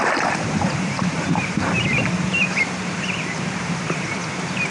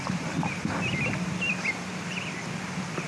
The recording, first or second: second